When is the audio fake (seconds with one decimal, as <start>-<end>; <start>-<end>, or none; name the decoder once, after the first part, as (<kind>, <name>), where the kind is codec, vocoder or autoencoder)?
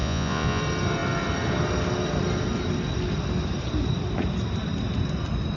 0.0-0.6 (vocoder, Vocos)